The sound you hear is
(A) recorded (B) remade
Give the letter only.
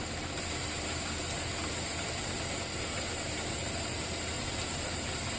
B